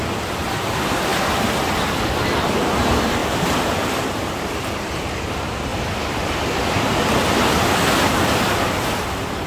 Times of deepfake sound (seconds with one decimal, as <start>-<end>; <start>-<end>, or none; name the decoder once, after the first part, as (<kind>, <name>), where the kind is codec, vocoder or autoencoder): none